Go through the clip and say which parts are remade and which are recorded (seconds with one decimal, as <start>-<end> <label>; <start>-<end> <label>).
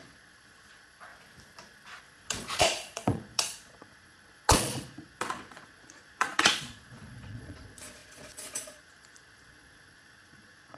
0.0-1.1 remade; 1.1-2.0 recorded; 2.0-10.8 remade